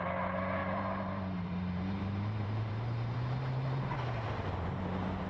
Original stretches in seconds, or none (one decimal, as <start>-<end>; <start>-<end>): 0.0-0.6; 3.8-5.3